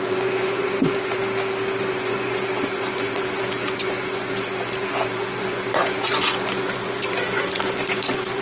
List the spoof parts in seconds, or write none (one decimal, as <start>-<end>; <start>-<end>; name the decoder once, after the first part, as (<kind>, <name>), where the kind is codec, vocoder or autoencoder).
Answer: 0.0-1.2 (vocoder, Vocos); 1.8-8.4